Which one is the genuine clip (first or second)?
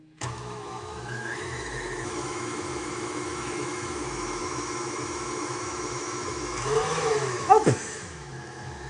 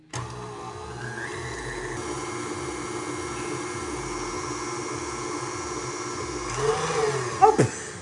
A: second